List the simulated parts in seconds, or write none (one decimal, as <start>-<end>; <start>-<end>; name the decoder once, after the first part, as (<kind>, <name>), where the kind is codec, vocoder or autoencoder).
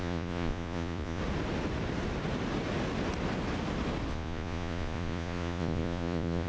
0.0-1.2 (vocoder, Vocos); 4.1-6.5